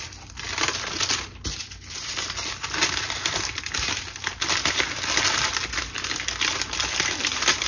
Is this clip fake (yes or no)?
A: no